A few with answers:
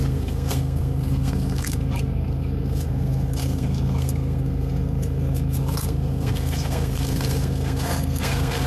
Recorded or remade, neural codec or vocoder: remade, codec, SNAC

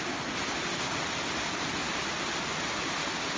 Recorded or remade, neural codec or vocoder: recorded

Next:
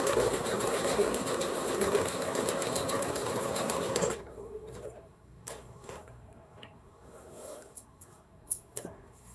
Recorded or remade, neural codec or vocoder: remade, codec, SNAC